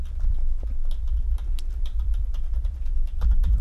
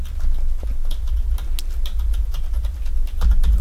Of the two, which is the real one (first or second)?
second